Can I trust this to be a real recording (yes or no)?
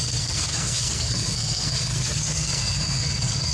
no